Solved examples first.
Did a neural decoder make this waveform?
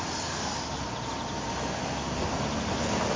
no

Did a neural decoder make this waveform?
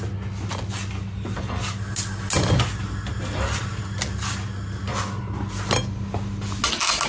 no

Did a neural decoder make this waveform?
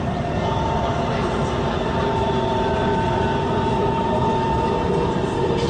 yes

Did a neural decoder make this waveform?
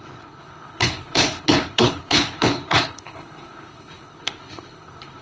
yes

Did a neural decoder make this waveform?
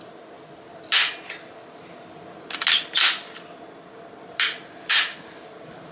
no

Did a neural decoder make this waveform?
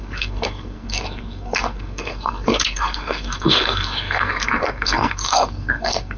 yes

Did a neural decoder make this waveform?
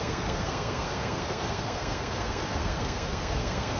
yes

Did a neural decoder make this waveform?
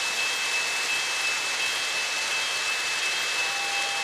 no